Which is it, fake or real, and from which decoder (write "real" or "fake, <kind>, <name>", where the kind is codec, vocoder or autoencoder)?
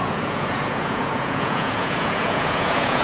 fake, vocoder, Vocos